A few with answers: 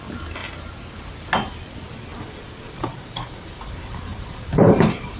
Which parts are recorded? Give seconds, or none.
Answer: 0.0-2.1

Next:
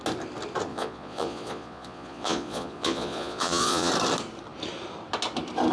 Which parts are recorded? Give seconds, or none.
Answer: 0.0-0.7; 3.9-5.7

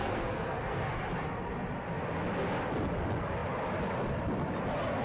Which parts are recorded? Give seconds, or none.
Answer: 1.0-5.0

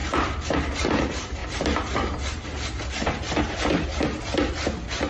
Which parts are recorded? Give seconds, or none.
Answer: 0.0-5.1

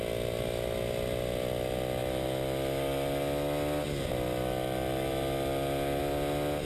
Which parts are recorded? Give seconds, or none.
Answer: 0.0-6.7

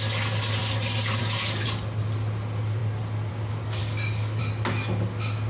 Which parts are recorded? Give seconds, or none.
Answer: 0.0-3.8; 4.4-5.5

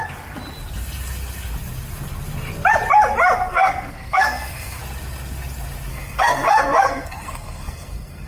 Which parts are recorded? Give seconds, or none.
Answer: 0.0-3.5; 4.8-5.9

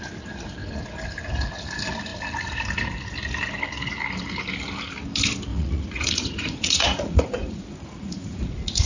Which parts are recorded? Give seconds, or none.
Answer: 0.0-5.5